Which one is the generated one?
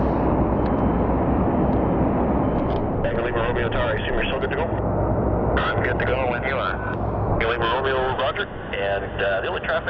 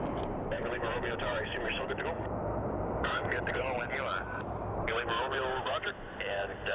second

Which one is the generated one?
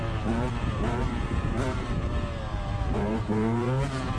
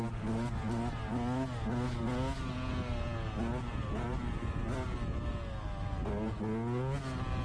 first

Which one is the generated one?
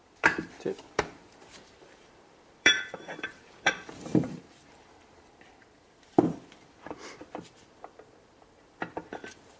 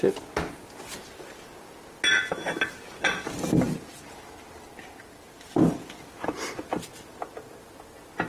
first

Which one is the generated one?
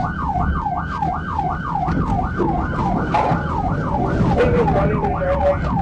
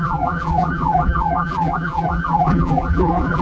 second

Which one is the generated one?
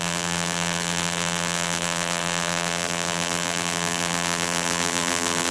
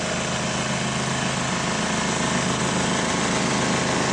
first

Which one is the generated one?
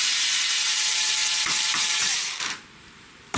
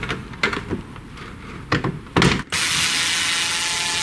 first